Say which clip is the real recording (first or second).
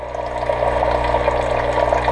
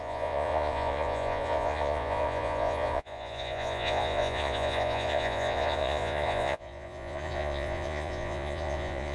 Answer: first